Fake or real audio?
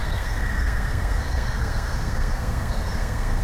fake